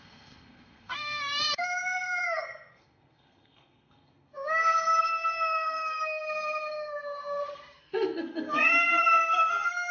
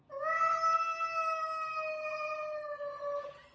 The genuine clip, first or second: second